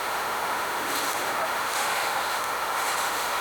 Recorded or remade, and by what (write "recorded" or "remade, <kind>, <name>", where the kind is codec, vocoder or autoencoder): remade, autoencoder, DAC-VAE